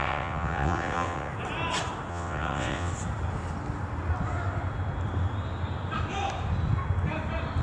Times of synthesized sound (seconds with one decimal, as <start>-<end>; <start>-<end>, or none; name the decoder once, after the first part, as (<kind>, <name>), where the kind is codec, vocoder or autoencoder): 0.0-1.3 (vocoder, WaveNeXt); 2.1-2.9